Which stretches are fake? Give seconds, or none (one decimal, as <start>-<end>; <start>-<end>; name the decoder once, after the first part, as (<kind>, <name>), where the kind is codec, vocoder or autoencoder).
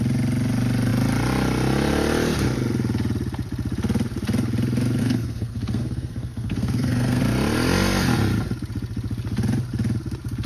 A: 5.0-7.2 (codec, SNAC)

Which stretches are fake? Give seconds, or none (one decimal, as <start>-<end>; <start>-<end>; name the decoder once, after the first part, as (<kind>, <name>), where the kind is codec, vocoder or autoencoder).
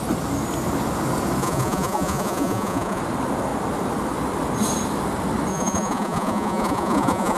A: 1.4-3.0 (vocoder, Vocos); 5.5-7.4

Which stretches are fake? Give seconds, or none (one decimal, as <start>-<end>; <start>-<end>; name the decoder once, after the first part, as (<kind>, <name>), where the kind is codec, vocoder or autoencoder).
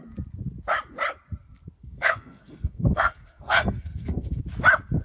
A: 1.8-4.4 (codec, SNAC)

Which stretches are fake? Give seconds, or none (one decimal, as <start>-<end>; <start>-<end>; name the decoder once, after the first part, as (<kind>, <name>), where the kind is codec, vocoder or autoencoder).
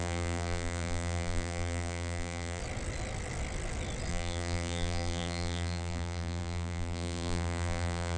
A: 0.0-2.6 (vocoder, BigVGAN v2); 4.1-8.2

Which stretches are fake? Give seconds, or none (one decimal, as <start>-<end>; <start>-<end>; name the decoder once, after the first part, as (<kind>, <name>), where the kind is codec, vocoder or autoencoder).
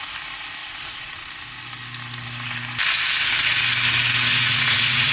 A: 0.6-1.3 (vocoder, Vocos); 4.3-5.1